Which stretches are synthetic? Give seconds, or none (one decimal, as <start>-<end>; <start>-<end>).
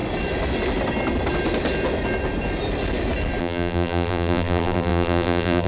3.4-5.7